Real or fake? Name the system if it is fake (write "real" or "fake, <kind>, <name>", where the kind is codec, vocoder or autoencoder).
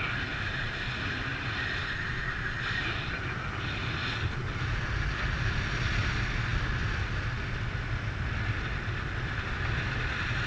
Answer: real